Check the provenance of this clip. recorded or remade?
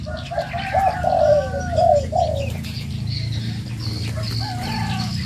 recorded